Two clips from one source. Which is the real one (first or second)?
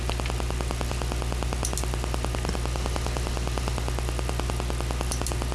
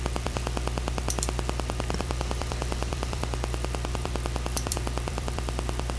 first